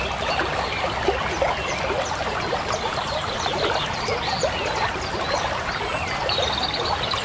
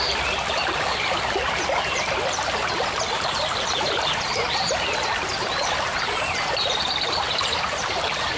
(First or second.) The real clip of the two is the first